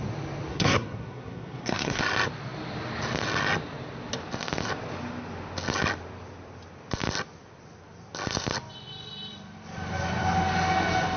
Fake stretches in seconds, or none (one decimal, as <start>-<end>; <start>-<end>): 0.5-2.0